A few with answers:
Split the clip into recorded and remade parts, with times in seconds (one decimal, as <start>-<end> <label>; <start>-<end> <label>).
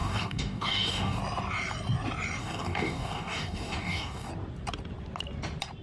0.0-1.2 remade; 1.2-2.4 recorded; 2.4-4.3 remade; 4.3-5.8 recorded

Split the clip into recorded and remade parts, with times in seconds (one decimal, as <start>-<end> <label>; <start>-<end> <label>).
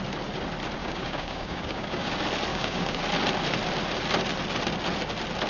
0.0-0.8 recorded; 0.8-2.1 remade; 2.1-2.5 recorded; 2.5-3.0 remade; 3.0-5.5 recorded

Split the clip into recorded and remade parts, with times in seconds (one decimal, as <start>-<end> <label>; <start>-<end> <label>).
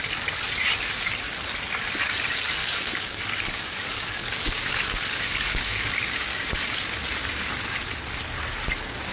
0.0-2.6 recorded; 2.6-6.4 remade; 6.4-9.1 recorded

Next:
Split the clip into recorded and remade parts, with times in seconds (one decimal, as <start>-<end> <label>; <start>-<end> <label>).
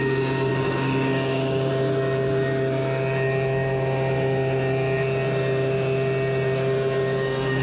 0.0-0.5 recorded; 0.5-1.7 remade; 1.7-7.6 recorded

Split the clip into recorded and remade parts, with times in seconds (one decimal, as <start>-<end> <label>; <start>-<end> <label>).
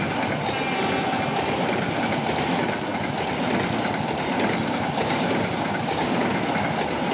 0.0-5.0 recorded; 5.0-6.3 remade; 6.3-7.1 recorded